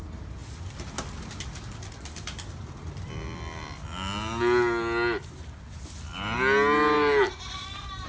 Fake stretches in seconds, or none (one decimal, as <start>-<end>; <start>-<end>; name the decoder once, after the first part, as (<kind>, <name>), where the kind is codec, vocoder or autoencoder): none